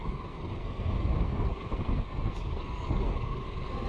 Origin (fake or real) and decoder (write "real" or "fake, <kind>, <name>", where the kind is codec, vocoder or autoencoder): fake, codec, SNAC